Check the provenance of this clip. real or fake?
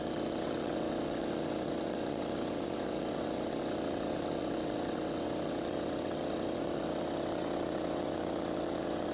fake